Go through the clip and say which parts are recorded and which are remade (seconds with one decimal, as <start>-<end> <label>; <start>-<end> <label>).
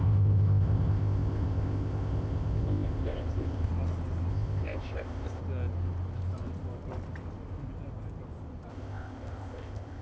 0.0-3.7 remade; 3.7-4.3 recorded; 4.3-5.4 remade; 5.4-8.7 recorded; 8.7-10.0 remade